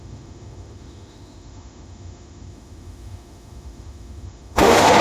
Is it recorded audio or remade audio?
remade